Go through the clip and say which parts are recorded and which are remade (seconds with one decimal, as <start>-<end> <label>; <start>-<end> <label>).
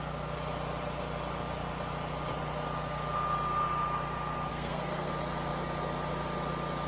0.0-4.5 recorded; 4.5-5.1 remade; 5.1-6.9 recorded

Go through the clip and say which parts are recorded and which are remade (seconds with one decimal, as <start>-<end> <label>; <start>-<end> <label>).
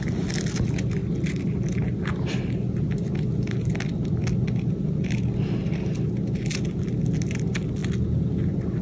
0.0-8.8 recorded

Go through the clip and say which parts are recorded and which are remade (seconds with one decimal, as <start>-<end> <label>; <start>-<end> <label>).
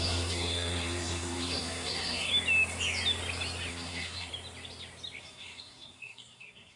0.0-2.3 remade; 2.3-3.7 recorded; 3.7-4.3 remade; 4.3-5.2 recorded; 5.2-6.8 remade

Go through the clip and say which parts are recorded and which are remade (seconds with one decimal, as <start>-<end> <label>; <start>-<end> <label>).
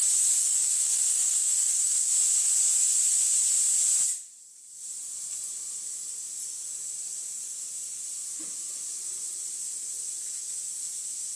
0.0-0.4 recorded; 0.4-2.1 remade; 2.1-11.4 recorded